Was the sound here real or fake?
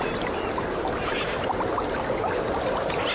real